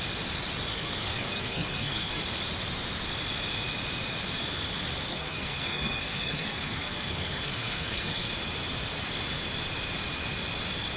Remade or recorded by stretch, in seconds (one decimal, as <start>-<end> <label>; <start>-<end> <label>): 0.0-0.7 recorded; 0.7-2.2 remade; 2.2-5.1 recorded; 5.1-8.3 remade; 8.3-11.0 recorded